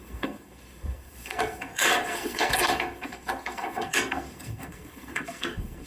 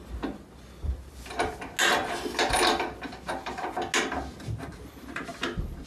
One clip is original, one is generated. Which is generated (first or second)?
first